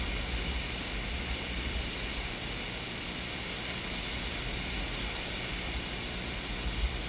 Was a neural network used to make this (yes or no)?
no